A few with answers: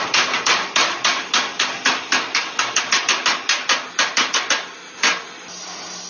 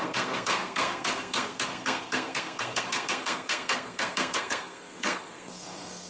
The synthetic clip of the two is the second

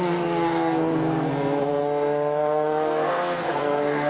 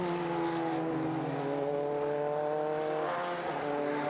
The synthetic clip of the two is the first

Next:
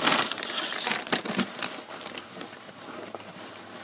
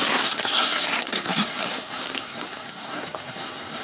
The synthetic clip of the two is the second